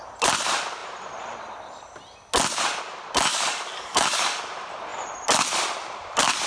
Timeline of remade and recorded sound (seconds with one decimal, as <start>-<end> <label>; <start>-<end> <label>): 0.0-3.3 recorded; 3.3-4.4 remade; 4.4-6.5 recorded